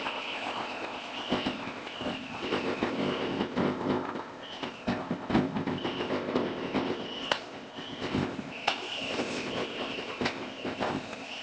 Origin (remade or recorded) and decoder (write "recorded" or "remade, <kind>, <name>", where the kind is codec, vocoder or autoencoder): remade, codec, ZipCodec